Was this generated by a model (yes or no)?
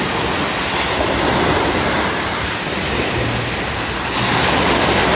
no